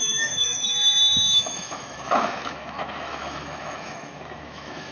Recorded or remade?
remade